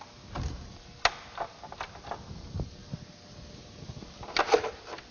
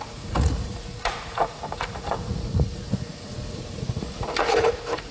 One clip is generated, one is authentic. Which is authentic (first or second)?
first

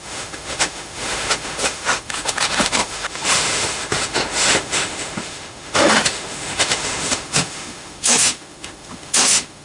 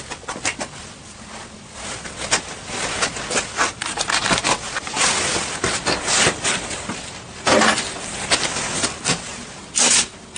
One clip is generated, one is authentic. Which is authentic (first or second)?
second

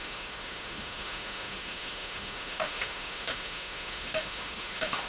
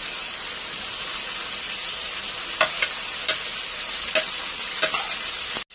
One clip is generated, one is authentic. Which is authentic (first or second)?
second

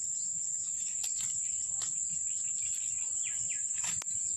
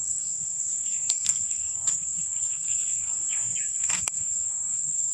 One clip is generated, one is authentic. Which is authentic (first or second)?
first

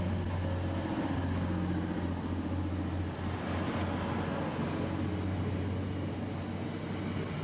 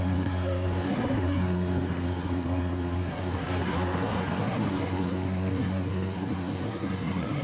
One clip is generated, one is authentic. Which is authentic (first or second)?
first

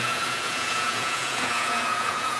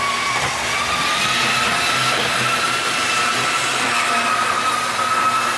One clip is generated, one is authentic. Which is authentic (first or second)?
second